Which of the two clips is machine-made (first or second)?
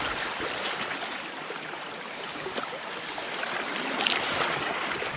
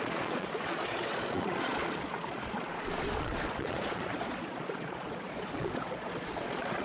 second